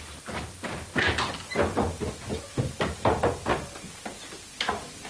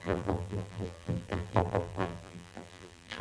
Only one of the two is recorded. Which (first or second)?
first